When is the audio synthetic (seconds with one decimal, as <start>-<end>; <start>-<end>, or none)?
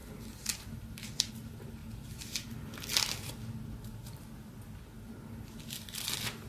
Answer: none